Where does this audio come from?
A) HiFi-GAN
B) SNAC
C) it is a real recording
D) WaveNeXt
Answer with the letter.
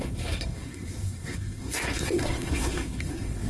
B